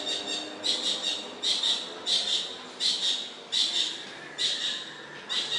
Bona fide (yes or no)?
yes